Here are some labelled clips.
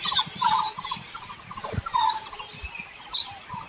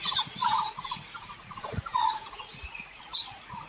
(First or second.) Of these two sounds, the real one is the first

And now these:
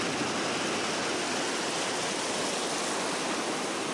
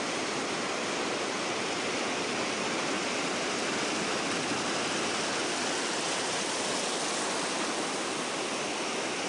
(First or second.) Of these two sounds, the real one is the first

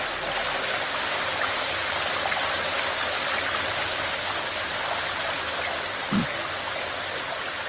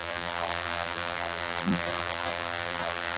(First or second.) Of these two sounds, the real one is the first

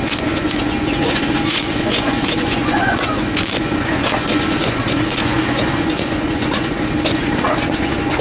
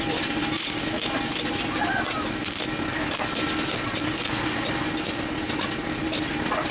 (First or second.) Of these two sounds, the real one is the second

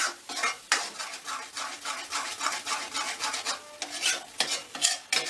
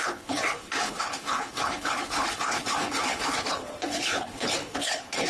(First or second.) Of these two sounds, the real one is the first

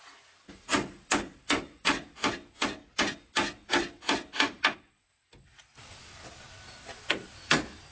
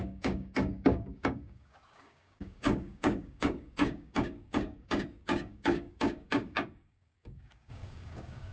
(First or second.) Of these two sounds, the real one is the first